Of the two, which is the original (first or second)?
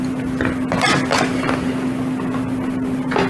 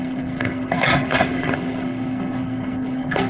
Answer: first